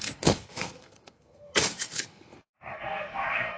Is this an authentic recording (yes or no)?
no